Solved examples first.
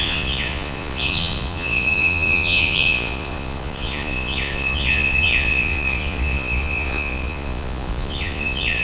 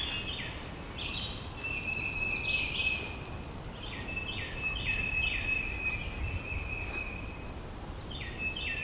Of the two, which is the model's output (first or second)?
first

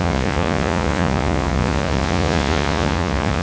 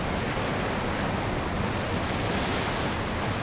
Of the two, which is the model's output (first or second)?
first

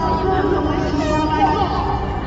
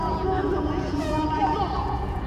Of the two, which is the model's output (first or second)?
second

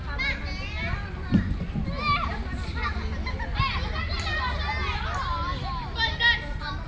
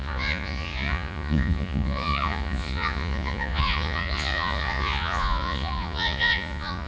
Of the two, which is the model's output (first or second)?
second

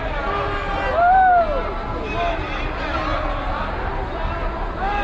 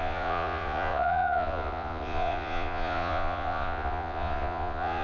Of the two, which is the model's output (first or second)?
second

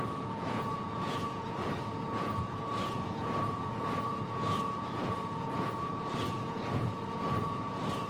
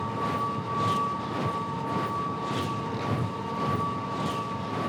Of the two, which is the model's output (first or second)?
first